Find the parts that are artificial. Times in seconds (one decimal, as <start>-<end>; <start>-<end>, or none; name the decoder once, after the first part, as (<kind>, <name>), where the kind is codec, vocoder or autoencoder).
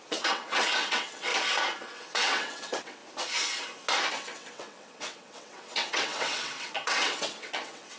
0.0-1.3 (vocoder, WaveNeXt); 1.8-3.0; 4.1-8.0